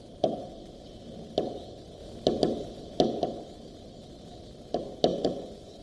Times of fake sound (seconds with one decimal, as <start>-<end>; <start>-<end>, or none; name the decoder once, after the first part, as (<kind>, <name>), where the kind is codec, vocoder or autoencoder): 5.1-5.8 (vocoder, Vocos)